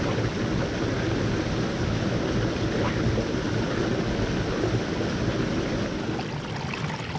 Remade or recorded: recorded